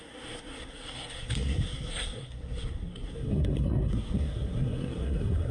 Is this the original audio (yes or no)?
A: no